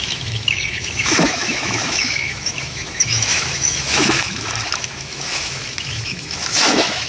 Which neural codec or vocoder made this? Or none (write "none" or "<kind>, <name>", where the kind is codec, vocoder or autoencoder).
autoencoder, DAC-VAE